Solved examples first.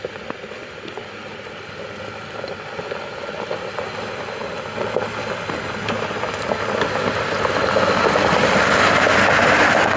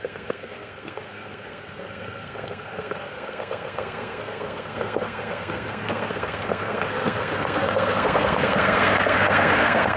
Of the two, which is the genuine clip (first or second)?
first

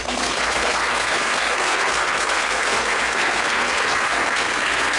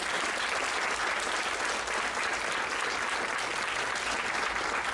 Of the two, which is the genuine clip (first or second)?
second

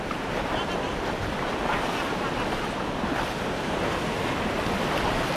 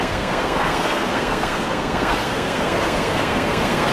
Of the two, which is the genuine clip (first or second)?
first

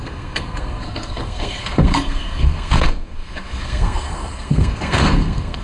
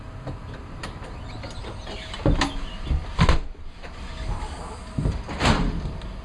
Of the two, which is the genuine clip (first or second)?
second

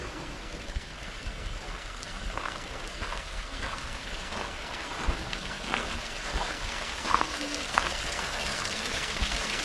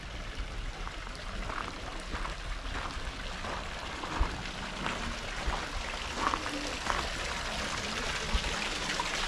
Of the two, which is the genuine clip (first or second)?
second